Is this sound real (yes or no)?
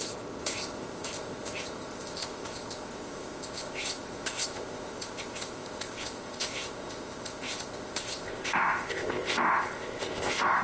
no